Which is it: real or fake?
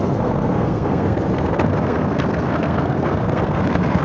fake